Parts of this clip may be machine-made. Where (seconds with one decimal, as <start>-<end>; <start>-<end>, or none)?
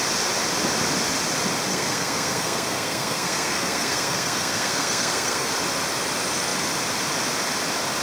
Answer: 1.7-5.5